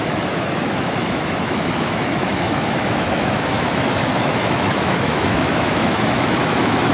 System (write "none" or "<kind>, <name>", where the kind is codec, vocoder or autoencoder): autoencoder, DAC-VAE